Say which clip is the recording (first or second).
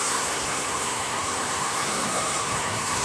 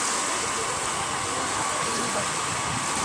second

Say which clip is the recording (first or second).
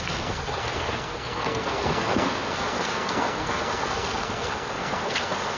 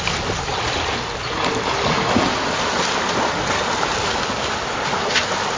second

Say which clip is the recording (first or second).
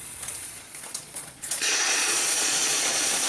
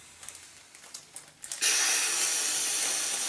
second